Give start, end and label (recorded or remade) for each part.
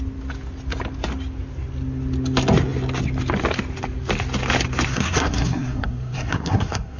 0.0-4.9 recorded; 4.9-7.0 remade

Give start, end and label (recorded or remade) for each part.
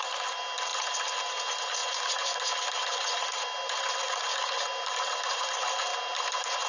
0.0-6.7 recorded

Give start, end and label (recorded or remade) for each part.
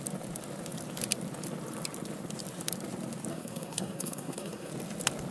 0.0-3.3 recorded; 3.3-4.7 remade; 4.7-5.3 recorded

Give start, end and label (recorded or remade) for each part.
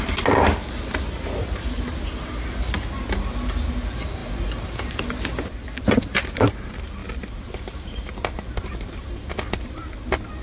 0.0-10.4 recorded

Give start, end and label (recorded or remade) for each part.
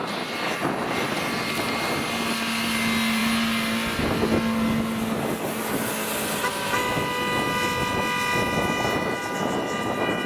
0.0-10.3 recorded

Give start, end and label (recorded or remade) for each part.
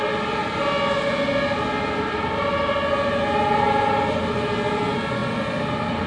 0.0-6.1 recorded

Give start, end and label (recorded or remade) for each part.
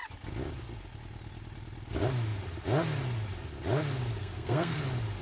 0.0-4.2 recorded; 4.2-4.8 remade; 4.8-5.2 recorded